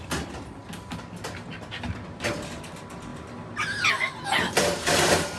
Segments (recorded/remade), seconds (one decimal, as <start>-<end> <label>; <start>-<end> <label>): 0.0-5.4 recorded